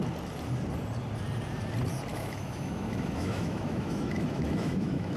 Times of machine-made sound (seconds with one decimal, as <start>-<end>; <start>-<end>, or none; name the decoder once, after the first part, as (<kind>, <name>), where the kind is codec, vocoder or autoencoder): 2.1-5.2 (autoencoder, DAC-VAE)